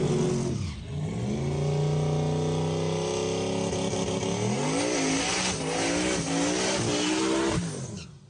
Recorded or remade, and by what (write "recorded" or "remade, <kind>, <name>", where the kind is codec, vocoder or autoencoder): recorded